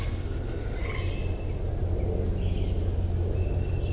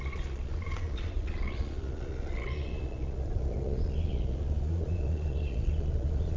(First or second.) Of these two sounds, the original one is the first